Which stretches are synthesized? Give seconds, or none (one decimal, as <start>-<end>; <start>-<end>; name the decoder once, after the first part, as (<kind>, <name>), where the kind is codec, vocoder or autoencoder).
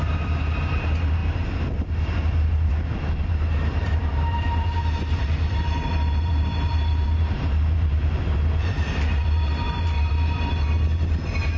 0.0-11.6 (vocoder, BigVGAN v2)